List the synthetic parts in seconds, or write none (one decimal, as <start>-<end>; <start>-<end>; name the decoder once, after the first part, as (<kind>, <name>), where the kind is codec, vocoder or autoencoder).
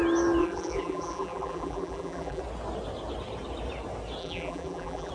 0.4-2.4 (vocoder, BigVGAN v2); 4.2-5.1